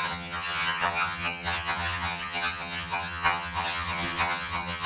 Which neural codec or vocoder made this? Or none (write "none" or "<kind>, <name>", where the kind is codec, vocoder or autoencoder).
vocoder, HiFi-GAN